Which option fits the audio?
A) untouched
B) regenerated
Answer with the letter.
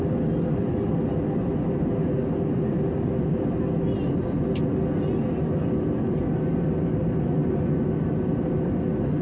A